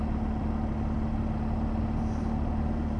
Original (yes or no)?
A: yes